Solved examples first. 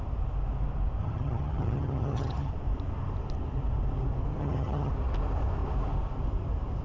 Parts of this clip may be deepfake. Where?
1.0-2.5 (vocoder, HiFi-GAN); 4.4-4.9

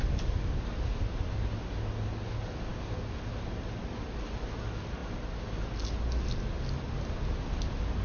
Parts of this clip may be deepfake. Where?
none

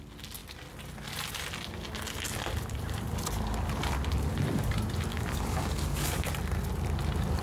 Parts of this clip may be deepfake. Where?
5.1-6.3 (codec, DAC)

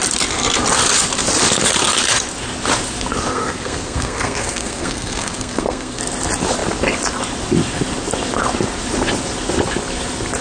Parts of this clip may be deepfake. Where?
3.3-6.0 (codec, SNAC)

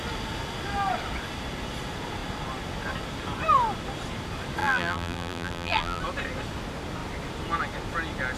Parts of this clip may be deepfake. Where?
4.6-6.0 (vocoder, BigVGAN v2)